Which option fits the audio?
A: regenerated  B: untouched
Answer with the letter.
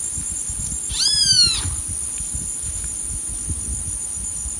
B